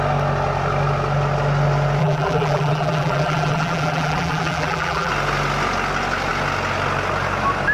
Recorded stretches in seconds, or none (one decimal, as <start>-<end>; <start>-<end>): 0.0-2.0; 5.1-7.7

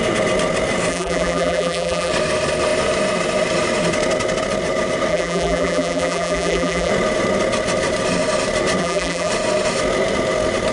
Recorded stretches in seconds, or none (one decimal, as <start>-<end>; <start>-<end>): 0.0-0.9; 2.1-5.1; 6.9-8.8; 9.3-10.7

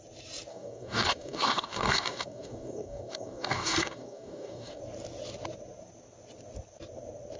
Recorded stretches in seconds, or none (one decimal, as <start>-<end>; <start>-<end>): 0.0-0.5; 4.8-7.4

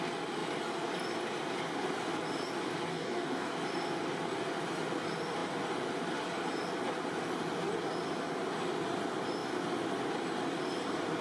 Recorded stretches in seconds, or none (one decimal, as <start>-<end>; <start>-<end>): 0.0-2.9; 3.5-11.2